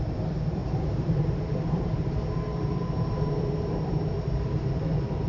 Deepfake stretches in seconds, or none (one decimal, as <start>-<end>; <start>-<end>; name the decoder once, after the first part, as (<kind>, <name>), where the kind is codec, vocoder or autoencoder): 0.0-5.3 (vocoder, BigVGAN v2)